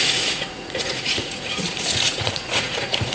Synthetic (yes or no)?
yes